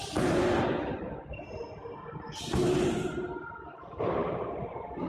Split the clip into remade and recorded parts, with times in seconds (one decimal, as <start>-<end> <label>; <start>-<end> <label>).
0.0-4.2 recorded; 4.2-5.1 remade